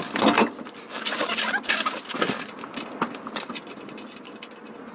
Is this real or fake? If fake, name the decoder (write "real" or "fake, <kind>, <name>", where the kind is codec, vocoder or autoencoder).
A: real